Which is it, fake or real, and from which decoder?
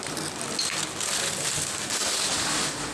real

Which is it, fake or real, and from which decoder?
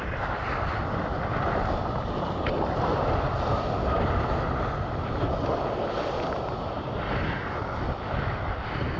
real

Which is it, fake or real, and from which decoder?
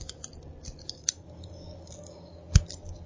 real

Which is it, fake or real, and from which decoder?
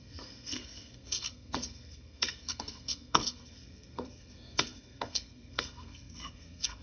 fake, codec, SNAC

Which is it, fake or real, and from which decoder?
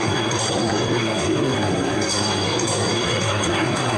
fake, codec, SNAC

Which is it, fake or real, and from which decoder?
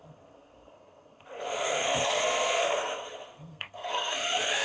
fake, codec, SNAC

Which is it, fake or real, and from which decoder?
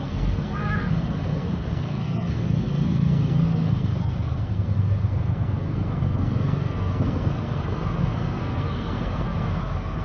fake, codec, SNAC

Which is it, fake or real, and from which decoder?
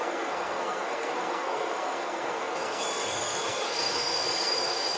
fake, codec, SNAC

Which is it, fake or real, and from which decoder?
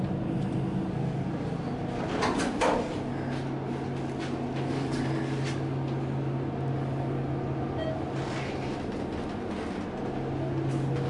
real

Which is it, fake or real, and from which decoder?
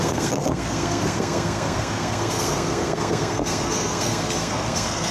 fake, codec, SNAC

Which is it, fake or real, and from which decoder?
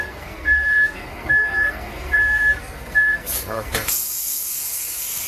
fake, codec, SNAC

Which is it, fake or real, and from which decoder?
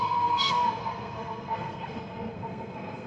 fake, codec, SNAC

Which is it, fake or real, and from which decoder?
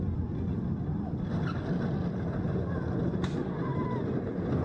real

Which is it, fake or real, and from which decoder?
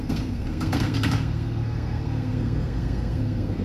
fake, codec, SNAC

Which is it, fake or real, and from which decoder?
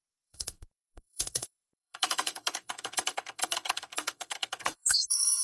fake, codec, SNAC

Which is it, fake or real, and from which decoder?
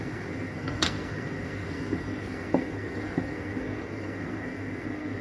fake, codec, SNAC